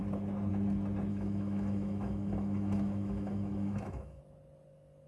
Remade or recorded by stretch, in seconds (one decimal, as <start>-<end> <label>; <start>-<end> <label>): 0.0-1.1 recorded; 1.1-4.2 remade; 4.2-5.1 recorded

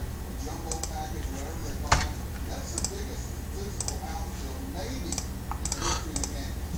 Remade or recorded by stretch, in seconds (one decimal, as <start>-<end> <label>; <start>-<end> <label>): 0.0-1.6 recorded; 1.6-2.5 remade; 2.5-6.8 recorded

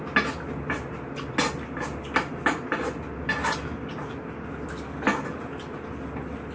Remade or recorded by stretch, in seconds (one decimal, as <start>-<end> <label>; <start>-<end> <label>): 0.0-6.5 recorded

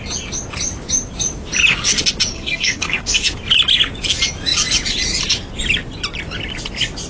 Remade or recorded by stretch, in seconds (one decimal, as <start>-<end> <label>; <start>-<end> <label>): 0.0-2.3 recorded; 2.3-3.3 remade; 3.3-7.1 recorded

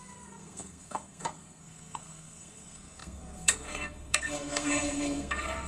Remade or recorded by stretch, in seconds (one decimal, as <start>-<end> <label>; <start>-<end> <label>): 0.0-5.7 remade

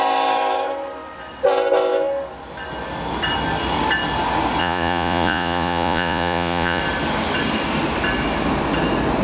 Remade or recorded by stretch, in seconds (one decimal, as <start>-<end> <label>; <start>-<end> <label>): 0.0-4.6 recorded; 4.6-6.8 remade; 6.8-9.2 recorded

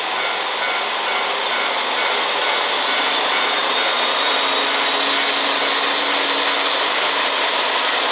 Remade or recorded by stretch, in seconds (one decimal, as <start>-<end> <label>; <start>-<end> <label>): 0.0-8.1 recorded